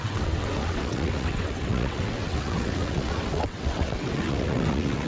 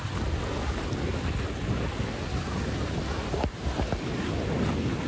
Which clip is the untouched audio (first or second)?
second